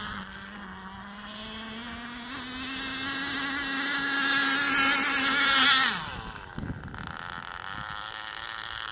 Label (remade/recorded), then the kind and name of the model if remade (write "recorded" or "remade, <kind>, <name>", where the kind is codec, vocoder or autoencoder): recorded